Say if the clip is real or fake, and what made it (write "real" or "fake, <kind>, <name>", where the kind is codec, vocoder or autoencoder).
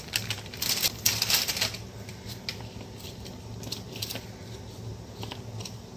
real